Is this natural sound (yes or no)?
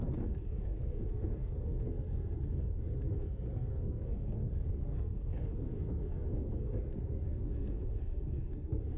no